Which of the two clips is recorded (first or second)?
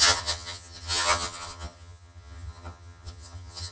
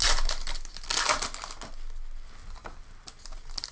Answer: second